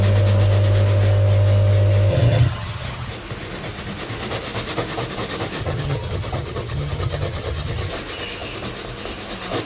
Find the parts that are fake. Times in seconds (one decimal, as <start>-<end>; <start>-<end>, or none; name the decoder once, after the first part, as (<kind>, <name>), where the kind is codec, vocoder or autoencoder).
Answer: 2.1-3.1 (vocoder, HiFi-GAN); 5.6-7.9